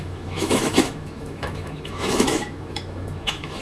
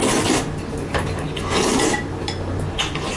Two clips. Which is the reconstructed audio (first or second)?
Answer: first